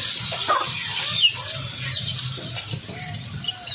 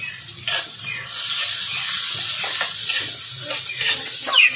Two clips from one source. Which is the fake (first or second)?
first